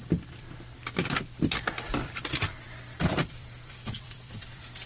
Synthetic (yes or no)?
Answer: yes